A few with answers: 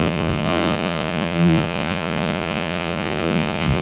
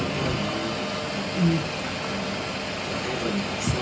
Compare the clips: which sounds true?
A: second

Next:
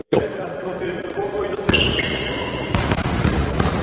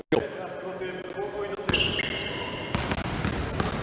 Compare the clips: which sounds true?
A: second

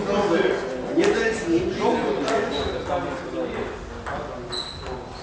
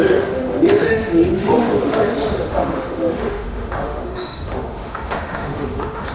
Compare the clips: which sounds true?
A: first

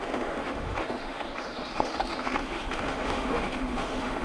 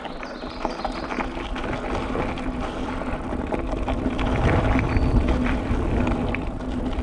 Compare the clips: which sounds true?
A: second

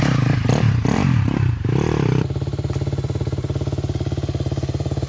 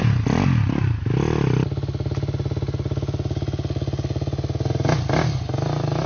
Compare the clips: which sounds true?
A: second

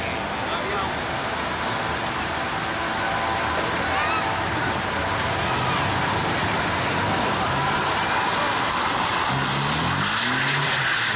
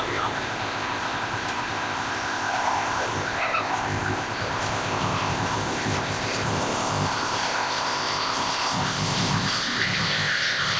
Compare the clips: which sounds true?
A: first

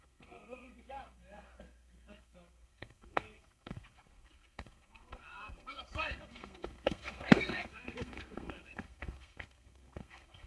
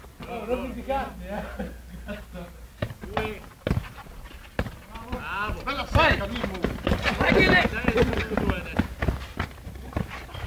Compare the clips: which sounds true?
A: second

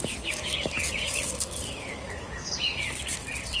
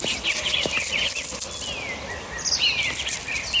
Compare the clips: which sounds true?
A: second